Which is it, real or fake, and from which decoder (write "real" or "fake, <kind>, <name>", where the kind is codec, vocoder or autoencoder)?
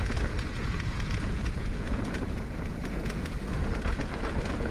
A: fake, vocoder, Vocos